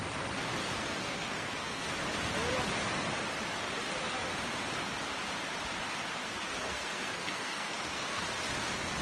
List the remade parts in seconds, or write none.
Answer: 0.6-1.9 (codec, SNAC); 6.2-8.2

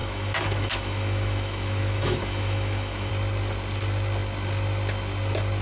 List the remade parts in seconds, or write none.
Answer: 0.0-3.1 (autoencoder, DAC-VAE)

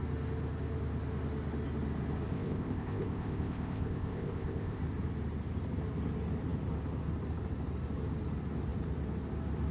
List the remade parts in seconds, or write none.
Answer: 2.3-4.8 (codec, ZipCodec)